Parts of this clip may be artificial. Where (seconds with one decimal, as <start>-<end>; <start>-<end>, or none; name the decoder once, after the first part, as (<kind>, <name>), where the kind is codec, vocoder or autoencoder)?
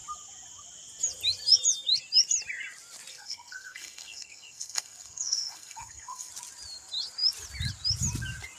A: 3.1-6.3 (codec, SNAC)